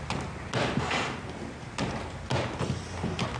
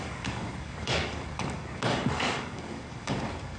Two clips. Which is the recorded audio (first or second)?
first